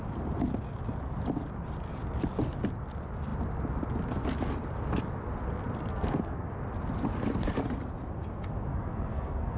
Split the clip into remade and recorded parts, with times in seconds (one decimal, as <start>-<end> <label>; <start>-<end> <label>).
0.0-5.9 recorded; 5.9-6.5 remade; 6.5-8.7 recorded; 8.7-9.6 remade